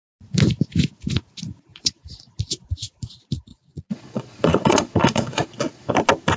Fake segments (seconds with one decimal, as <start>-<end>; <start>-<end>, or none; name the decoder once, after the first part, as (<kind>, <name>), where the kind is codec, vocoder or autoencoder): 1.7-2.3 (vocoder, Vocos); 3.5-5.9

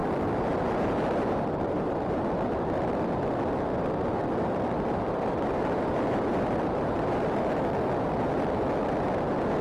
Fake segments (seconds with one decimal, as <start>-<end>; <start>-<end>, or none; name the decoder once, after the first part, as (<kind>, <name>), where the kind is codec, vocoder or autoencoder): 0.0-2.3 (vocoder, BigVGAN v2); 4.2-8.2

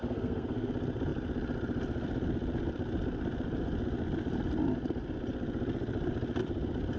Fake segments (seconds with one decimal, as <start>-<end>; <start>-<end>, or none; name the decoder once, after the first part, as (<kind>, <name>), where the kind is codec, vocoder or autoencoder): 0.0-0.7 (codec, SNAC)

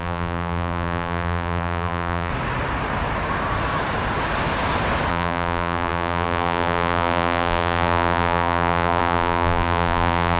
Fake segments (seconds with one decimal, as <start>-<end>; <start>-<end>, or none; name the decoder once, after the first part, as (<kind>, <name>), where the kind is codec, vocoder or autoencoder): 0.0-2.3 (vocoder, BigVGAN v2); 5.1-10.4